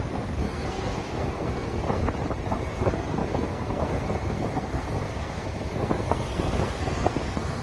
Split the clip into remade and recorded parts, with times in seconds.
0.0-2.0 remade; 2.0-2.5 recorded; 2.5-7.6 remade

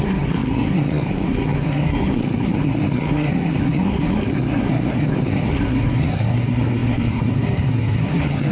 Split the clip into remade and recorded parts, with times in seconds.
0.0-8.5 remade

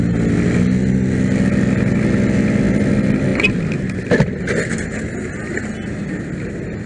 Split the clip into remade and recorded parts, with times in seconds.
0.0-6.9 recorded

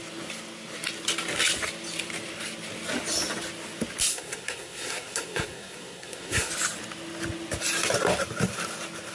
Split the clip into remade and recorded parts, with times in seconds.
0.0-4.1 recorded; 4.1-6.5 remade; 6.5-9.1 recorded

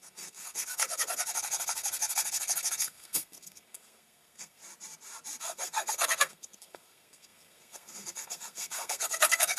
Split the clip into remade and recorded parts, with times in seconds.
0.0-4.6 remade; 4.6-5.4 recorded; 5.4-9.6 remade